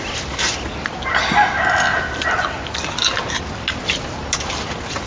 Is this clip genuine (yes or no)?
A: yes